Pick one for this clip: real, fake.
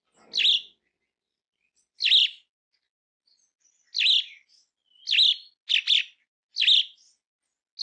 real